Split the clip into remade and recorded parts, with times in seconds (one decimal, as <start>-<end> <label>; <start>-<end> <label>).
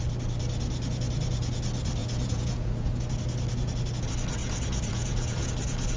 0.0-2.0 recorded; 2.0-2.9 remade; 2.9-4.4 recorded; 4.4-5.5 remade; 5.5-6.0 recorded